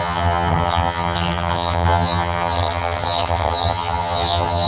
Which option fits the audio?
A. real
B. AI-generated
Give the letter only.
B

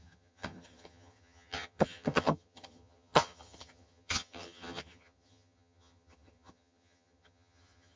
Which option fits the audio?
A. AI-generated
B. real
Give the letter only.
A